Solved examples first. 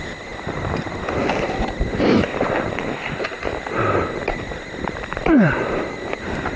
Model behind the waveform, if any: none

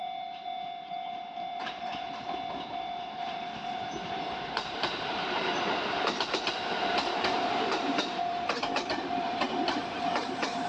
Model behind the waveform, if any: vocoder, BigVGAN v2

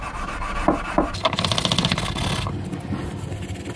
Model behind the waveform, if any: none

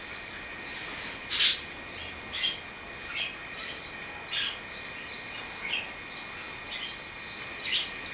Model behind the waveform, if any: none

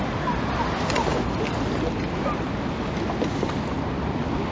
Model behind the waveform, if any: none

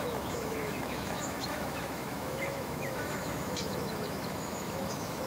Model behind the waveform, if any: autoencoder, DAC-VAE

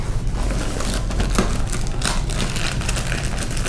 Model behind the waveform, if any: none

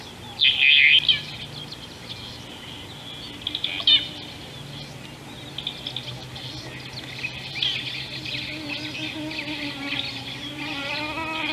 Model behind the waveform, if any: none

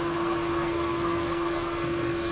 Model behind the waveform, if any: codec, SNAC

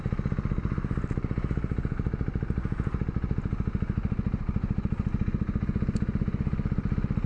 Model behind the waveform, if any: none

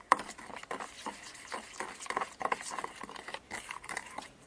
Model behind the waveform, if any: none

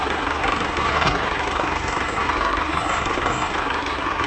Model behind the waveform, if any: codec, SNAC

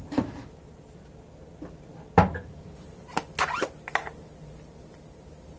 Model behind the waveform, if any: none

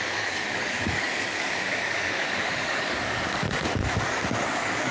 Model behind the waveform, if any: codec, DAC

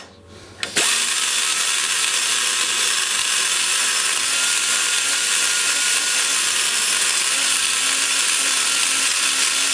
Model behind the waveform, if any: none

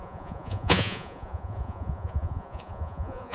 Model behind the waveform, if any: vocoder, Vocos